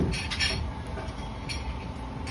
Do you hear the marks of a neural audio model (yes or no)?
no